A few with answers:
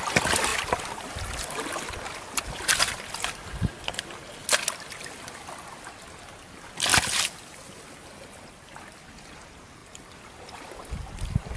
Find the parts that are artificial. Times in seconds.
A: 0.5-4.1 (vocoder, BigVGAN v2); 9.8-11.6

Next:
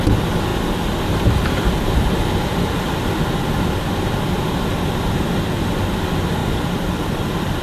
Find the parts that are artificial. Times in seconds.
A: 0.5-5.1 (vocoder, BigVGAN v2); 6.4-7.0

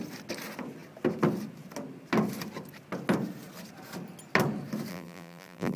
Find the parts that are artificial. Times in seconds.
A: 4.9-5.8 (vocoder, BigVGAN v2)